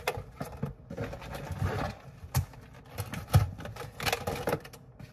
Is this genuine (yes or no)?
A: yes